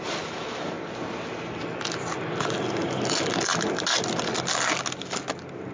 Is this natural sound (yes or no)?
yes